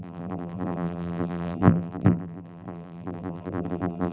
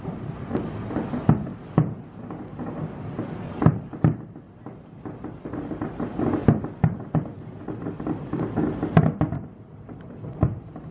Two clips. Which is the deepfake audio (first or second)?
first